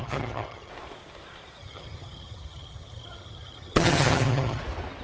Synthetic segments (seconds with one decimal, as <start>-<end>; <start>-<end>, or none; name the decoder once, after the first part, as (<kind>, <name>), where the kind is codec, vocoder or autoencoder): 0.0-0.7 (vocoder, HiFi-GAN); 1.6-4.6